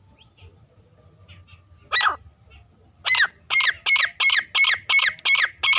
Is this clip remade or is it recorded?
recorded